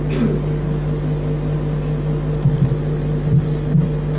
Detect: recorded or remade recorded